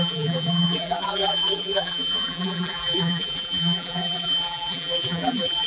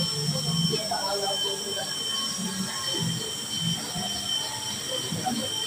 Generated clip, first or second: first